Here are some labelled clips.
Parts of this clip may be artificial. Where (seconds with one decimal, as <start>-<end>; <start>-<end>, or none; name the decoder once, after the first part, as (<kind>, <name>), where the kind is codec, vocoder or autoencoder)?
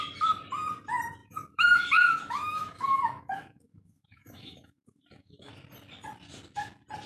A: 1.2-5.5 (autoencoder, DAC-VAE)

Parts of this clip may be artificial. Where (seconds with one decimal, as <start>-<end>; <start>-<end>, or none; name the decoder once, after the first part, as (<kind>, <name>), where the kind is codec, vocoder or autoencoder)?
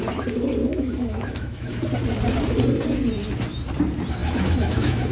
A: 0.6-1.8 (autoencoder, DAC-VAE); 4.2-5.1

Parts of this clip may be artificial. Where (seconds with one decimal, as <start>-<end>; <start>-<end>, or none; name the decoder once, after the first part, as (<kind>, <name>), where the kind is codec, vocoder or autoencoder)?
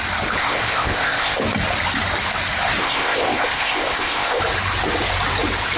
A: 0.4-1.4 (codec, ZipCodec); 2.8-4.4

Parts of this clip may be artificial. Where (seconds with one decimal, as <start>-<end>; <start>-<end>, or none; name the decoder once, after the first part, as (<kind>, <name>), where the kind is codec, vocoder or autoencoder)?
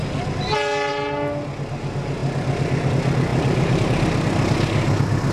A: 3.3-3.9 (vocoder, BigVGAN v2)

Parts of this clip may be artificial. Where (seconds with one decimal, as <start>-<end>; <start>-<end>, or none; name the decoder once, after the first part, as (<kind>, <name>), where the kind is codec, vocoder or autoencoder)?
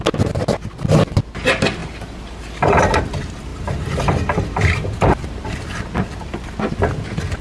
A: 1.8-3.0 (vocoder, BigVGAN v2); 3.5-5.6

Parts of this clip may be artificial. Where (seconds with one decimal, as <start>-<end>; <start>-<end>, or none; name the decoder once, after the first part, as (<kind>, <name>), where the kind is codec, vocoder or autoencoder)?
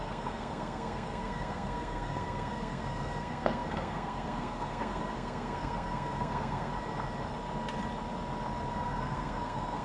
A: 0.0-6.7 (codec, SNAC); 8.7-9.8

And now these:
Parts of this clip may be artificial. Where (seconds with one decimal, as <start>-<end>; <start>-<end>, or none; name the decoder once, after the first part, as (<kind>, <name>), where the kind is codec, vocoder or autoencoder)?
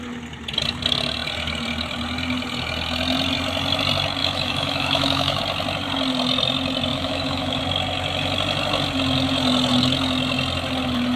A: 4.2-5.4 (autoencoder, DAC-VAE); 6.9-7.6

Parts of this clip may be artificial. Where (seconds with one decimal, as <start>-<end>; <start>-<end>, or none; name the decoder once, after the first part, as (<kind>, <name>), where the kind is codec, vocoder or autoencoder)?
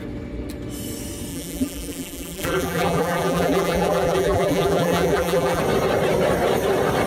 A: 1.3-5.6 (vocoder, BigVGAN v2)